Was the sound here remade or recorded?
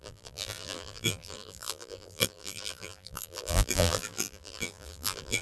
remade